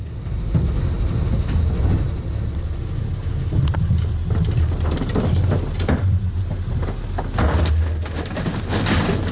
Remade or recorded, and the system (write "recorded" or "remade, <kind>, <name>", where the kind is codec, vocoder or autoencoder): recorded